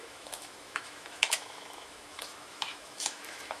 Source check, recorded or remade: remade